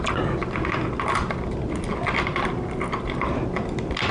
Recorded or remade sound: recorded